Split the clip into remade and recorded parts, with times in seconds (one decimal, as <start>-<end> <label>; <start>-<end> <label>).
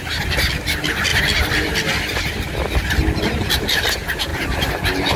0.0-5.2 recorded